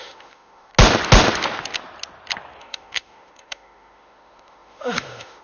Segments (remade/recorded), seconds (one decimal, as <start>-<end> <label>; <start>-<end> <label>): 0.0-0.7 remade; 0.7-2.6 recorded; 2.6-5.4 remade